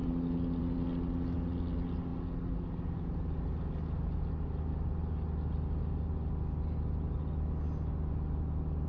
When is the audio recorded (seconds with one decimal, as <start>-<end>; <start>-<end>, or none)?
0.0-8.9